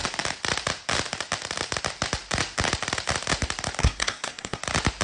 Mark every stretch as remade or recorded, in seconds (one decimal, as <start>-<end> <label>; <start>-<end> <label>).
0.0-3.8 recorded; 3.8-4.6 remade; 4.6-5.0 recorded

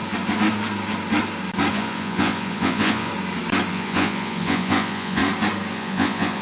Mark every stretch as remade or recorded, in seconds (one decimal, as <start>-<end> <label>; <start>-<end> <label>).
0.0-1.7 recorded; 1.7-3.1 remade; 3.1-3.7 recorded; 3.7-5.2 remade; 5.2-5.7 recorded; 5.7-6.4 remade

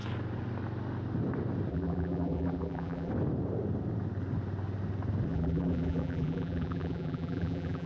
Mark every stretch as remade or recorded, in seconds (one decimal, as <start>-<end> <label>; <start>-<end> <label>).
0.0-1.7 recorded; 1.7-3.1 remade; 3.1-5.3 recorded; 5.3-7.9 remade

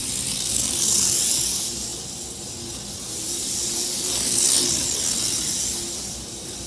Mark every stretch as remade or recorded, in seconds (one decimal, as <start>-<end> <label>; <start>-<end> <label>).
0.0-1.9 remade; 1.9-5.9 recorded; 5.9-6.7 remade